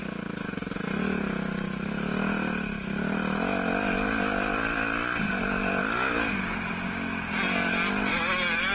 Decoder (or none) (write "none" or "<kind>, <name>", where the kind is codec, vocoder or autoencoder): none